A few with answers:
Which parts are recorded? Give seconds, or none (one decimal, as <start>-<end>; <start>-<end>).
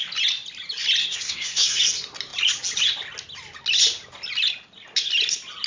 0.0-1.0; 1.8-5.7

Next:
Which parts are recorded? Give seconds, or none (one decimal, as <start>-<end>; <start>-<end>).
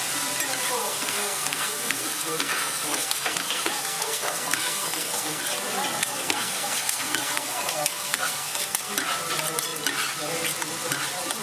0.0-0.8; 5.4-6.0; 8.9-11.4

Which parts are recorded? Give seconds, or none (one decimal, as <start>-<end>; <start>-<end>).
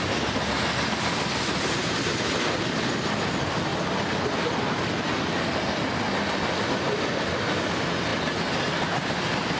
0.0-9.6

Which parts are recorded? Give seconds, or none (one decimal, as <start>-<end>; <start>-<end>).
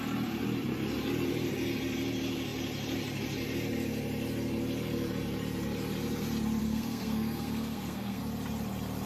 0.0-6.6; 8.2-9.1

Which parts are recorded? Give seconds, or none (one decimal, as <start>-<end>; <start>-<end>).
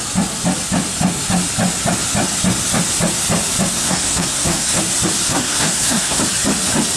0.0-3.7; 4.8-5.3; 6.2-7.0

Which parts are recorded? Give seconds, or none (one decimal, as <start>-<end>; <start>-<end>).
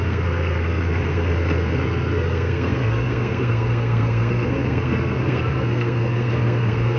none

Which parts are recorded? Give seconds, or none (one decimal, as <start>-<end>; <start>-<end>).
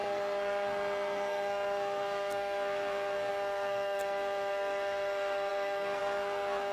none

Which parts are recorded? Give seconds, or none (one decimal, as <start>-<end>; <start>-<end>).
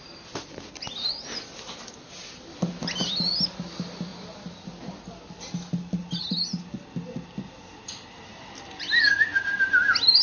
0.0-10.2